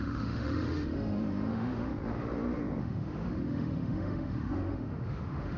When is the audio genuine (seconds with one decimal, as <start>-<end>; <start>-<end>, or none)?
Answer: 1.9-2.8